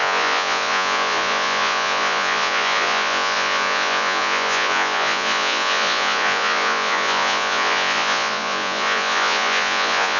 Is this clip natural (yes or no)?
no